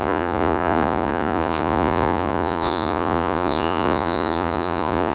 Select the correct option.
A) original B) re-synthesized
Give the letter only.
B